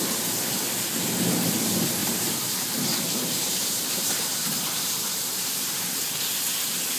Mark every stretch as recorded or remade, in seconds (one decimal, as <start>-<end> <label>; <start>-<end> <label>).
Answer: 0.0-2.0 recorded; 2.0-6.2 remade; 6.2-7.0 recorded

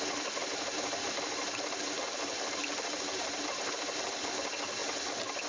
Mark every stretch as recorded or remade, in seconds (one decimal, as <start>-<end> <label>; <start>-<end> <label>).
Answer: 0.0-0.4 recorded; 0.4-3.7 remade; 3.7-5.5 recorded

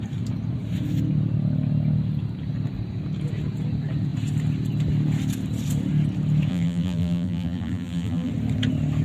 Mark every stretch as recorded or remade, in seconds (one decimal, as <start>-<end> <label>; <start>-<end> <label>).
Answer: 0.0-6.5 recorded; 6.5-8.3 remade; 8.3-9.0 recorded